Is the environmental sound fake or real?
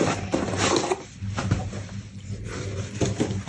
real